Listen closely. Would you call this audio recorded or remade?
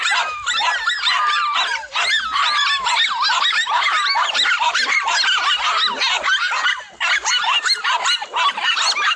recorded